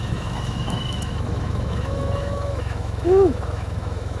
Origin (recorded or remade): remade